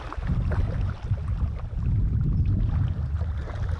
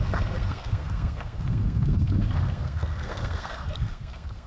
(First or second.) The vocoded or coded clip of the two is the second